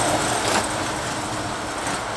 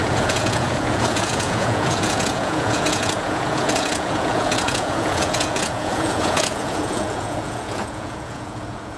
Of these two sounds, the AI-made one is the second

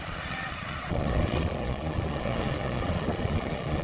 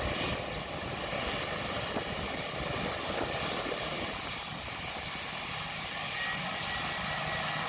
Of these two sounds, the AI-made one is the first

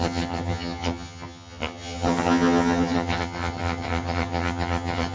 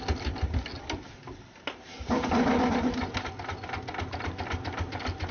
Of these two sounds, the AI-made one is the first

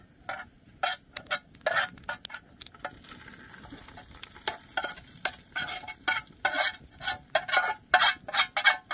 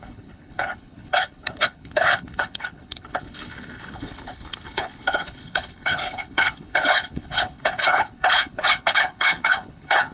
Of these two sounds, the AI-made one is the second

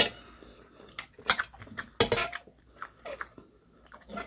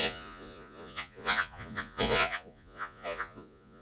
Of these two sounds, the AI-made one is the second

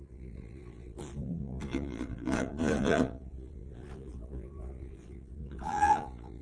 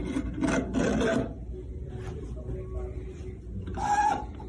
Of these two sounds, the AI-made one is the first